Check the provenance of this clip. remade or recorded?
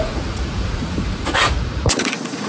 remade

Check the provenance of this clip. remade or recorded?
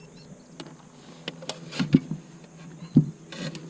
recorded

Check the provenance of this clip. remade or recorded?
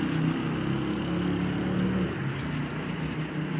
recorded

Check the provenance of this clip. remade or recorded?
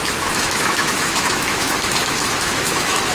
remade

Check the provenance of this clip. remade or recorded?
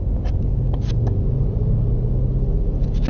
recorded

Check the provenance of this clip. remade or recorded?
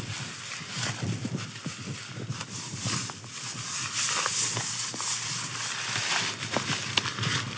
recorded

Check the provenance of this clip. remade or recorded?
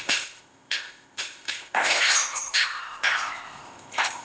remade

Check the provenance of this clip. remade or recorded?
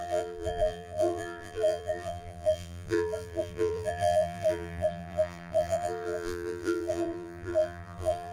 remade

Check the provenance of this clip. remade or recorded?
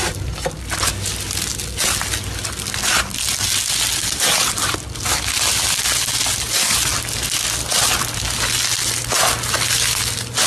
recorded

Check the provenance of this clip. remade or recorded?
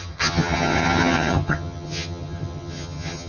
remade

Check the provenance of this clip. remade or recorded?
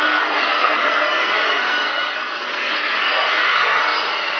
remade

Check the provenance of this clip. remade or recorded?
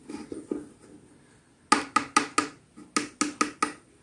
recorded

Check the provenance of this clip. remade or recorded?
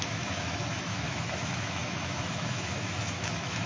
remade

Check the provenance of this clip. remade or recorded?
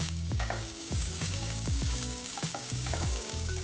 remade